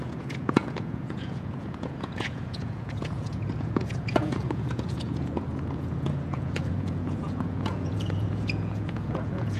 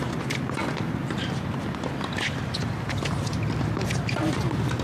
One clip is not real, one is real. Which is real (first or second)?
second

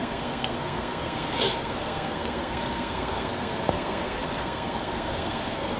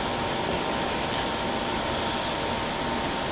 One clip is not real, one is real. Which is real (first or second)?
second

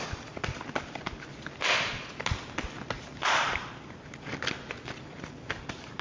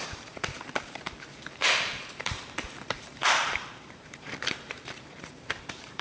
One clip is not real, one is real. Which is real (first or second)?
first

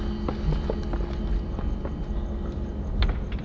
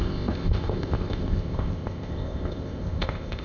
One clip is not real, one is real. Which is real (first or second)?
first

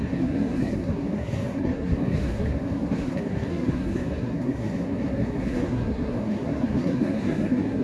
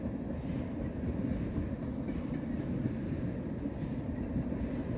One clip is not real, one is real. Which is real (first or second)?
second